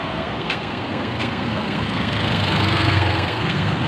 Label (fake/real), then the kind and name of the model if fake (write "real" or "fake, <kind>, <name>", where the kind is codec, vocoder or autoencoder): fake, codec, SNAC